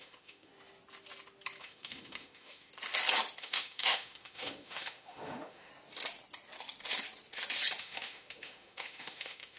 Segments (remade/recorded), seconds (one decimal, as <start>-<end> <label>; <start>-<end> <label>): 0.0-0.5 remade; 0.5-1.6 recorded; 1.6-2.7 remade; 2.7-3.4 recorded; 3.4-5.7 remade; 5.7-7.8 recorded; 7.8-9.6 remade